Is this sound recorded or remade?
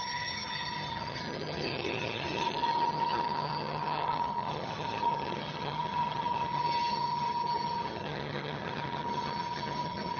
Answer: remade